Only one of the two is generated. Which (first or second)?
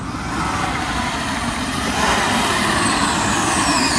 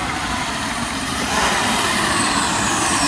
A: second